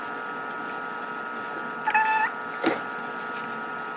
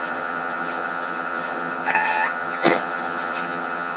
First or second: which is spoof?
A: second